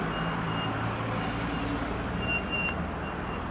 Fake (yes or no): no